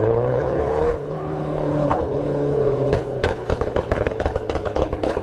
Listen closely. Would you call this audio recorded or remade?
remade